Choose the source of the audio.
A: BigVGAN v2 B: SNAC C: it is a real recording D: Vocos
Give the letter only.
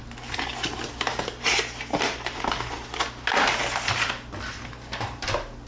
C